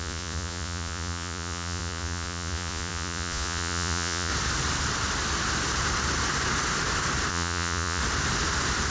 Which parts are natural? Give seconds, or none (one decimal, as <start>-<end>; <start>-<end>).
4.3-7.3; 8.0-8.9